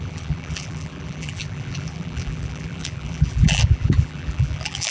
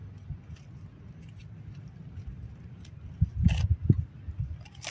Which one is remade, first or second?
first